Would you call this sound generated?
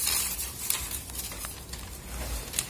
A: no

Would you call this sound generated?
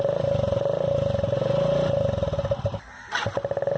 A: no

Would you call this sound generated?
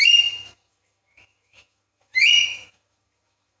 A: yes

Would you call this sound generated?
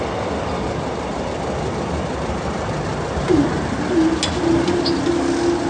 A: no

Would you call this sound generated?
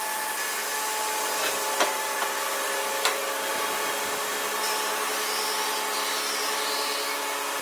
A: no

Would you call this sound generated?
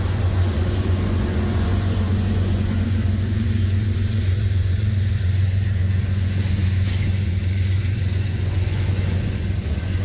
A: yes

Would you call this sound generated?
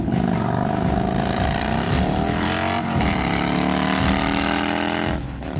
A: no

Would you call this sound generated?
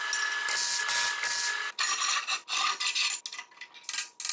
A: no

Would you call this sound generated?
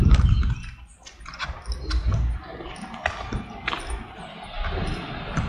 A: no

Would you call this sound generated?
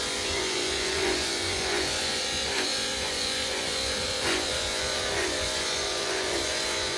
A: yes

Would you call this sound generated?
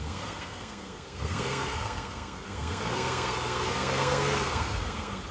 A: yes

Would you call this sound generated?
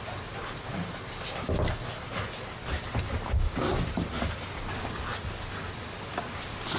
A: yes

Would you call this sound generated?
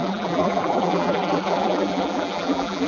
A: yes